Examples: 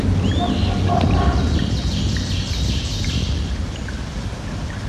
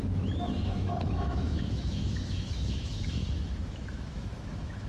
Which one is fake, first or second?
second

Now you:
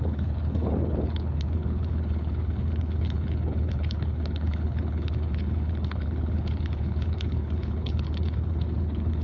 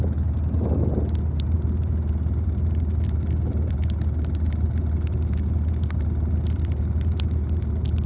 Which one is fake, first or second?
first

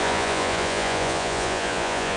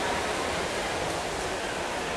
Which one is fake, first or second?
first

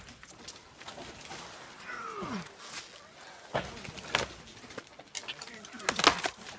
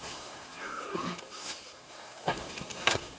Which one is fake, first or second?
second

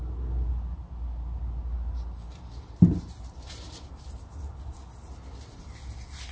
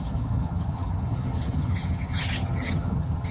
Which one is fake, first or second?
second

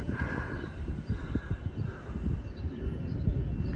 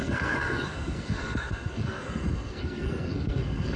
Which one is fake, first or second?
second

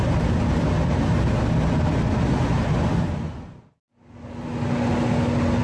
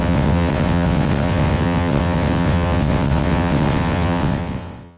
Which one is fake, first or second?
second